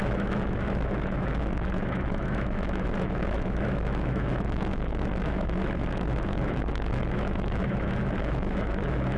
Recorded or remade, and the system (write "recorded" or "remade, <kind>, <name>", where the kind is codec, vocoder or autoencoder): remade, autoencoder, DAC-VAE